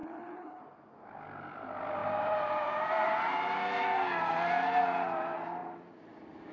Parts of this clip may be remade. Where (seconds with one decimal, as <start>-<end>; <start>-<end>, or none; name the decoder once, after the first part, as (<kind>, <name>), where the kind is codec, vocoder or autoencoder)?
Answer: 0.0-0.6 (codec, HILCodec)